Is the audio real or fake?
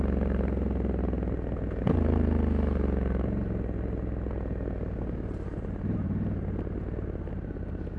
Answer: real